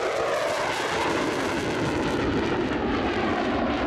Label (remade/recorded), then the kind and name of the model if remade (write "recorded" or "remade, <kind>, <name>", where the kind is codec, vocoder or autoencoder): remade, vocoder, BigVGAN v2